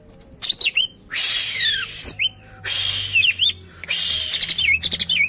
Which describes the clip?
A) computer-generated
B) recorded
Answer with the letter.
B